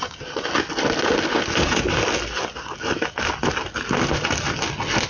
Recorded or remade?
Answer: recorded